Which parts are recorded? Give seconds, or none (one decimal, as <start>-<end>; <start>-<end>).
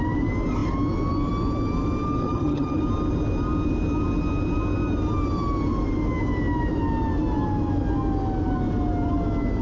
0.0-2.2; 2.8-9.6